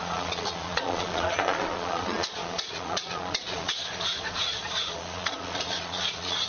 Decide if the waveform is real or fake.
fake